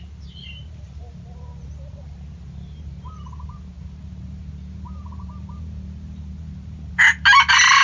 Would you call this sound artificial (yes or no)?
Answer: no